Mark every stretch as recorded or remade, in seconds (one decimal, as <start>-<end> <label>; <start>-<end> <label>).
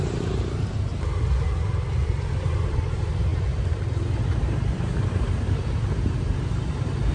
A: 0.0-0.9 remade; 0.9-1.7 recorded; 1.7-3.3 remade; 3.3-4.2 recorded; 4.2-7.1 remade